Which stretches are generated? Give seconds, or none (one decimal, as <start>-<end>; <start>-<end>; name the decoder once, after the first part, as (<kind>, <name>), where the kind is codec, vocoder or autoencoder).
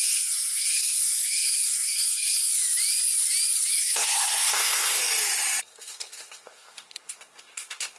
0.0-2.5 (codec, SNAC); 3.7-5.0; 5.6-8.0